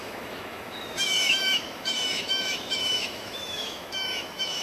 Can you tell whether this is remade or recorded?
remade